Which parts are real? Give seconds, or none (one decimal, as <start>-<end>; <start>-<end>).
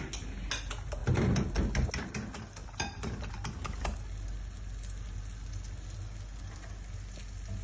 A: 0.0-2.6; 3.3-7.6